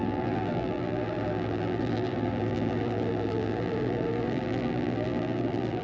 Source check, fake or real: fake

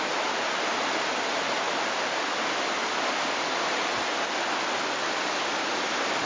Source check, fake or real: real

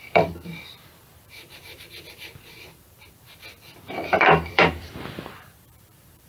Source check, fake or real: fake